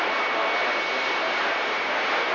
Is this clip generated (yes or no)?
no